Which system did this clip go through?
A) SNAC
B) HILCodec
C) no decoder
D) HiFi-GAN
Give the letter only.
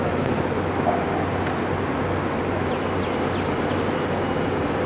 C